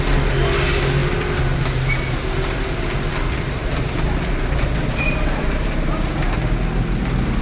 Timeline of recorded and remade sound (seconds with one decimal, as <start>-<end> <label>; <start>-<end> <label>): 0.0-3.6 recorded; 3.6-6.0 remade; 6.0-7.4 recorded